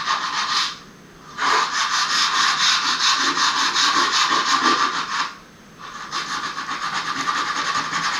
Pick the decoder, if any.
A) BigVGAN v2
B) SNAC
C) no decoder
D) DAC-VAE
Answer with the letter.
C